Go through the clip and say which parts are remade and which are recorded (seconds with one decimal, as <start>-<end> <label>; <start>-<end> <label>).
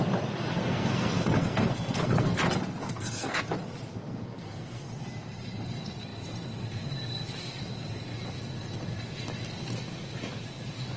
0.0-0.5 recorded; 0.5-2.4 remade; 2.4-2.8 recorded; 2.8-3.4 remade; 3.4-3.9 recorded; 3.9-4.9 remade; 4.9-11.0 recorded